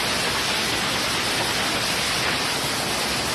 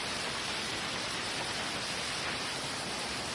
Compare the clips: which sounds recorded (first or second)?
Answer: first